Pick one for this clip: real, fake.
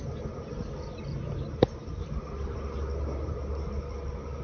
real